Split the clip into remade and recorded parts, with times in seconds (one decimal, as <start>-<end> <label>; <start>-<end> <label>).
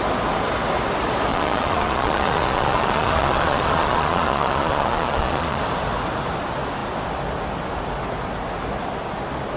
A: 0.0-1.3 recorded; 1.3-5.6 remade; 5.6-9.6 recorded